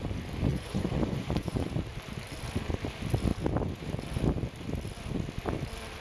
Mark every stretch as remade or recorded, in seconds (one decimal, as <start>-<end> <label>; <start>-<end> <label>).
0.0-0.5 recorded; 0.5-1.7 remade; 1.7-6.0 recorded